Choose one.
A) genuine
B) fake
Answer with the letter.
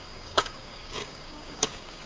B